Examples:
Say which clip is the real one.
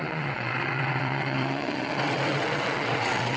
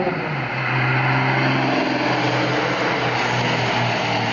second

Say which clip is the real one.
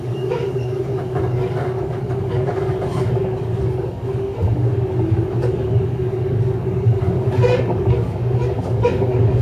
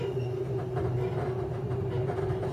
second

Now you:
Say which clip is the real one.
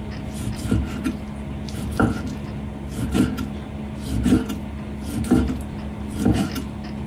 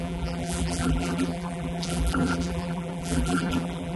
first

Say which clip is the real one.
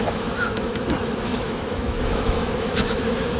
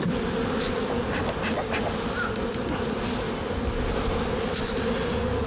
second